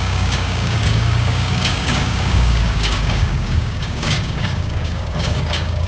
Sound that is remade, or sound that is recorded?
remade